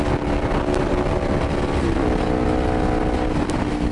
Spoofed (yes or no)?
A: no